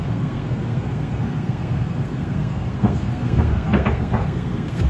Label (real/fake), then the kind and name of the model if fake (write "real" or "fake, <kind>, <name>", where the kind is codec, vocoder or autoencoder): fake, codec, SNAC